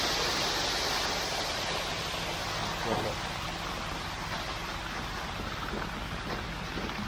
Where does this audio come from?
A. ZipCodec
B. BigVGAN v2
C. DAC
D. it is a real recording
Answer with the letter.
D